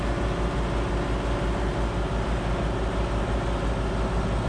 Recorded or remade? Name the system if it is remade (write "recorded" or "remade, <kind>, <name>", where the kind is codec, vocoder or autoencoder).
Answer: recorded